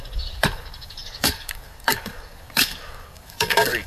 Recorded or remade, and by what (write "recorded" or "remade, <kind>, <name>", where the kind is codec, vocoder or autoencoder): remade, codec, DAC